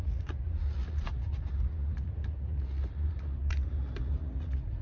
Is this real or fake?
fake